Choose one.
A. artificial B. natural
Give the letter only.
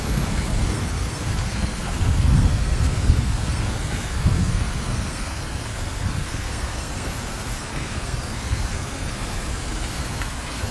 A